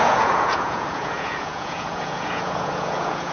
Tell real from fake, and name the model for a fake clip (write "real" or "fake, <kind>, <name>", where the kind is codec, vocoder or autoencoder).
fake, vocoder, Vocos